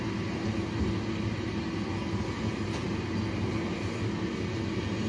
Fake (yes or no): no